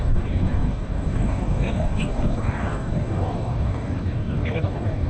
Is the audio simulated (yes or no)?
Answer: yes